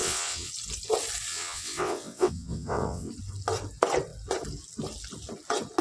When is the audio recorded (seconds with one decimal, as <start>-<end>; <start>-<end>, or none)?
0.5-1.3; 3.1-5.8